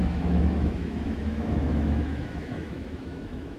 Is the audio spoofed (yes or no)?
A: yes